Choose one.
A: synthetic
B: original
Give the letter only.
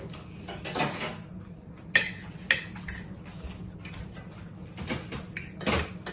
B